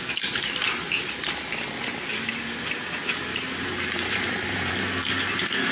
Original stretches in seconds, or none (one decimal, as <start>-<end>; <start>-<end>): 0.0-3.3; 4.7-5.7